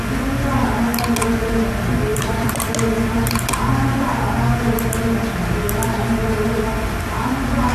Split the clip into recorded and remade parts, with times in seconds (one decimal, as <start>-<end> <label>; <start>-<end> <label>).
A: 0.0-2.1 recorded; 2.1-2.7 remade; 2.7-7.7 recorded